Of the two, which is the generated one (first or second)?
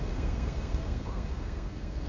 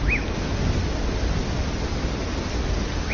first